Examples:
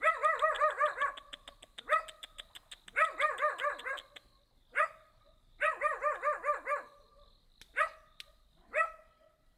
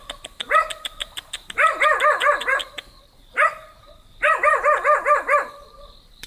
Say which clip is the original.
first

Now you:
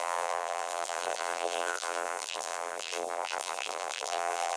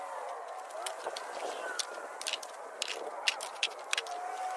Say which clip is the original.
second